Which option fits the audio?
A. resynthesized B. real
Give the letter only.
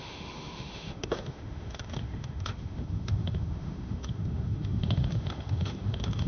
A